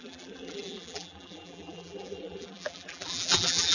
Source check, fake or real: fake